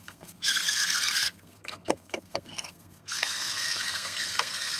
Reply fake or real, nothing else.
fake